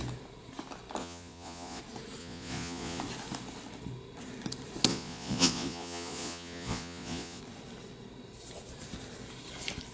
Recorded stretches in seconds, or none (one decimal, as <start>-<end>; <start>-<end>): 0.0-1.0; 1.8-2.2; 3.0-4.9; 7.4-9.9